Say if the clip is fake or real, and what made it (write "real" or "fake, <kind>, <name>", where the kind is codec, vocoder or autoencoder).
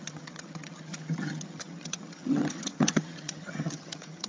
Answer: fake, vocoder, HiFi-GAN